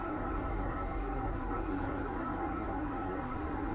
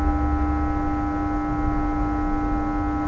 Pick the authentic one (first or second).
second